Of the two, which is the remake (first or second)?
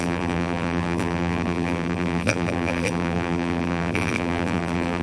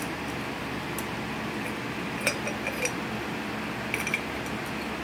first